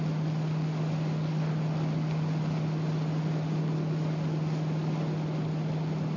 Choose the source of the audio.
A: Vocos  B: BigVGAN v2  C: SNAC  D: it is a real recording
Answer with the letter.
D